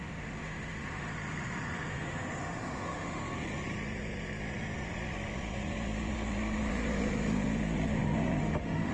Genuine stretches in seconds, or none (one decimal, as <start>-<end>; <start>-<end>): 1.1-1.9; 3.2-8.4